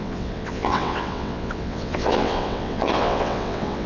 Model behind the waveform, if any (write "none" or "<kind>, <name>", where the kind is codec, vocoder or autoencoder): vocoder, WaveNeXt